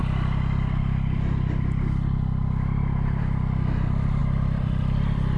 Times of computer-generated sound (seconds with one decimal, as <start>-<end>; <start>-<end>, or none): 4.2-5.4